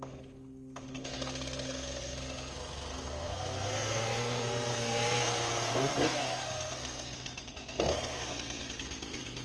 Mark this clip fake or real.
fake